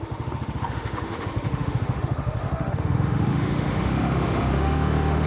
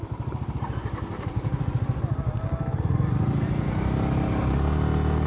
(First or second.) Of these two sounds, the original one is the second